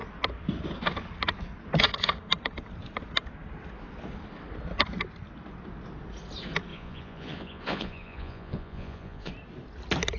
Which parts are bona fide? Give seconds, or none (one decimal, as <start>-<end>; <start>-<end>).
0.0-6.7; 9.3-10.2